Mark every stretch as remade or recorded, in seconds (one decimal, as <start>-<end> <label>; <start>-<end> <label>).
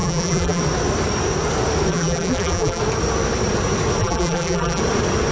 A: 0.0-0.6 remade; 0.6-1.9 recorded; 1.9-2.8 remade; 2.8-4.0 recorded; 4.0-4.8 remade; 4.8-5.3 recorded